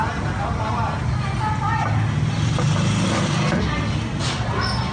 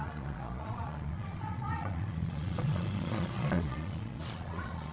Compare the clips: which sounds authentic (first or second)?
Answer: first